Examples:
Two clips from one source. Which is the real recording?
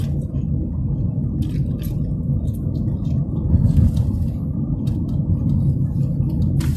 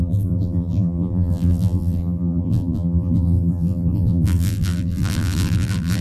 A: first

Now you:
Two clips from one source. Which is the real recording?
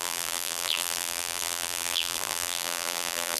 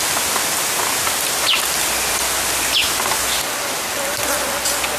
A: second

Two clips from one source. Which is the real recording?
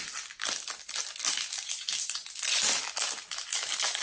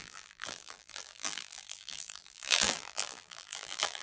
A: first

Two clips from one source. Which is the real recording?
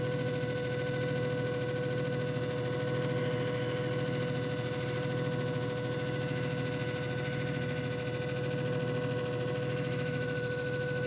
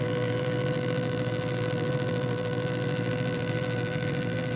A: first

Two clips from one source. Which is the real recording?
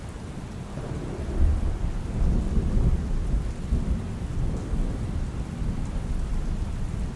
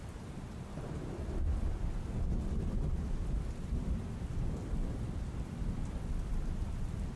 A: first